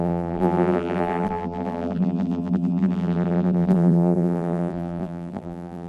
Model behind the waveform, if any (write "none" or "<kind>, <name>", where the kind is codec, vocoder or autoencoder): vocoder, BigVGAN v2